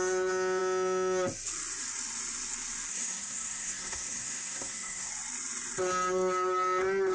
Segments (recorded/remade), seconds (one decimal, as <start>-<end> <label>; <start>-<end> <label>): 0.0-2.9 recorded; 2.9-5.1 remade; 5.1-7.1 recorded